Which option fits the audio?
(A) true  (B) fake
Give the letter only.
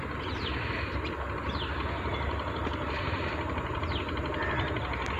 A